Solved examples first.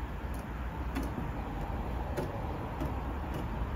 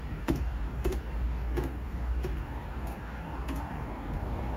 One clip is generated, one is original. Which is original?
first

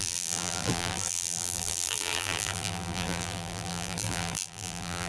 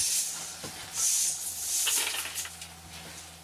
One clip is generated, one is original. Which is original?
second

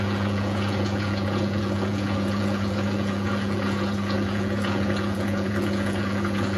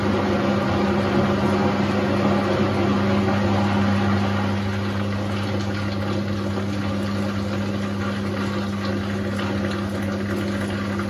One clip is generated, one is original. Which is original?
second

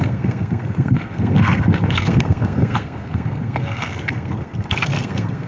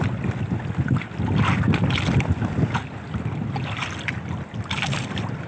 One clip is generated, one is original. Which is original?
second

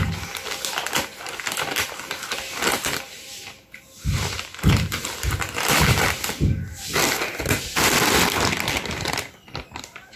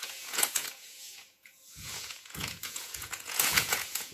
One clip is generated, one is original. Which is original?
first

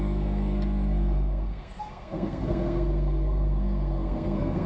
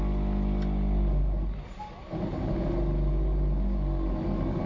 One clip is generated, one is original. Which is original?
second